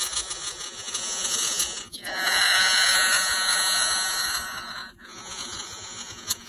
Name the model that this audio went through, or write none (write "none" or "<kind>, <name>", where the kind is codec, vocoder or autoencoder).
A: vocoder, Vocos